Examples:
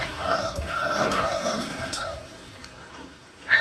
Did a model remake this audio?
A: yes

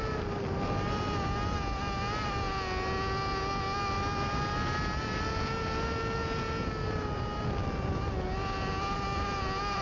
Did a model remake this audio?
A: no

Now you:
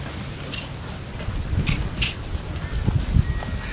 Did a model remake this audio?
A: no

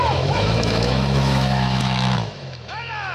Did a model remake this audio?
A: yes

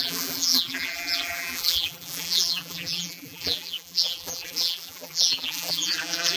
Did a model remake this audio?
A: yes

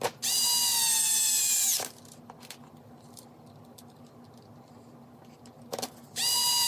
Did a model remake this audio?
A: no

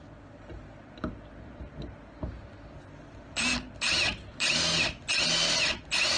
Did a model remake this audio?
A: no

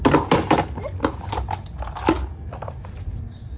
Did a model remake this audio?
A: no